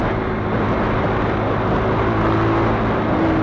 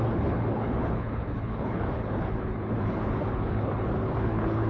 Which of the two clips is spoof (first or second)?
second